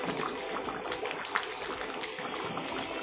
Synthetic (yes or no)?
no